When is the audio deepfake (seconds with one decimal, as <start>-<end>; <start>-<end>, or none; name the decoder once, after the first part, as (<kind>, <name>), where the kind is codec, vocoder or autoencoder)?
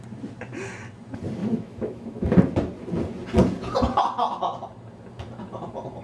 1.4-2.3 (autoencoder, DAC-VAE)